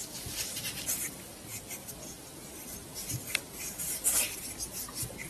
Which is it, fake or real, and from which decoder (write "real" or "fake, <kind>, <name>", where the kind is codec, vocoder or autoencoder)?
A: real